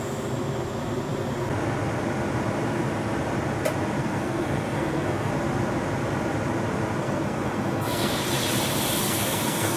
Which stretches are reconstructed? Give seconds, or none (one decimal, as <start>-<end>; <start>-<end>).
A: 4.0-5.3; 7.0-8.2; 9.0-9.8